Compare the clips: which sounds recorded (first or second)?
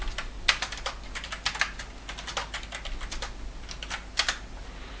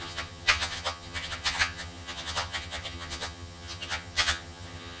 first